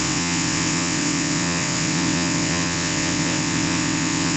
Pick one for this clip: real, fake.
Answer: fake